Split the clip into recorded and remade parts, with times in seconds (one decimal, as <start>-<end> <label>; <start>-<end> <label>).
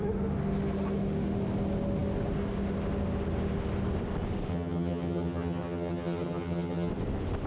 0.0-4.5 recorded; 4.5-6.9 remade; 6.9-7.5 recorded